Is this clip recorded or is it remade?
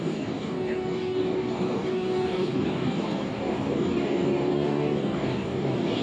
remade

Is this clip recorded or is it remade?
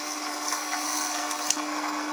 remade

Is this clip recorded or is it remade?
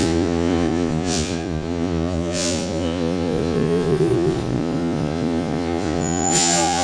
remade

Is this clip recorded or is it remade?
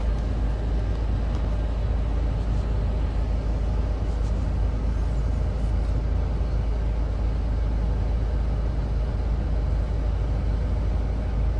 recorded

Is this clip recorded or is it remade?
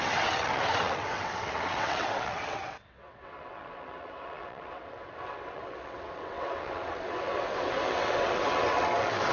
remade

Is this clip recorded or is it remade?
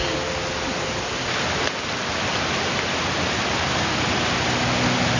recorded